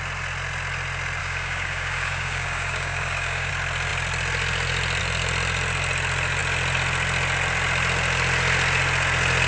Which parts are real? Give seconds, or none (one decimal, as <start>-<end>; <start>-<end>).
0.0-1.2; 3.5-9.5